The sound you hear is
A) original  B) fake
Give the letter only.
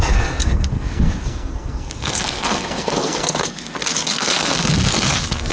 B